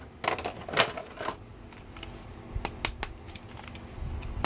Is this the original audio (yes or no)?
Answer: yes